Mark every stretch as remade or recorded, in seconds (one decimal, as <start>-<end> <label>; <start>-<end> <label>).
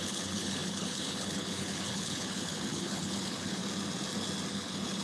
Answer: 0.0-3.6 remade; 3.6-4.5 recorded; 4.5-5.0 remade